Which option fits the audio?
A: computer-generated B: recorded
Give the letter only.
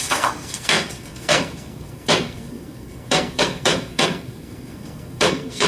A